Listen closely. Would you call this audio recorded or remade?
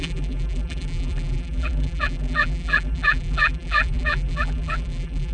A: remade